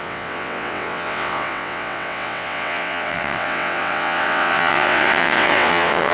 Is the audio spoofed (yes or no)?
yes